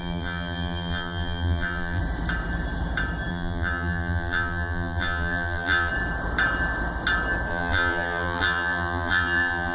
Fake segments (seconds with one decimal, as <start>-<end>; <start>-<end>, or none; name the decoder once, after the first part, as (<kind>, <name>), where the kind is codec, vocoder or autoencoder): 0.0-2.0 (vocoder, BigVGAN v2); 3.3-5.9; 7.5-9.7